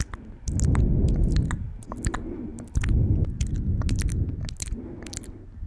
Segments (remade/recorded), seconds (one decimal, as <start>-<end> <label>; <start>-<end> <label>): 0.0-5.7 recorded